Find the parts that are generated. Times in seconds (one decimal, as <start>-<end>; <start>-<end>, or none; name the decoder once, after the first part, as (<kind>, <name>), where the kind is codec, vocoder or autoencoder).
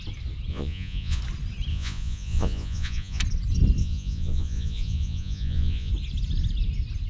0.5-1.2 (vocoder, Vocos); 1.7-3.2; 3.8-5.9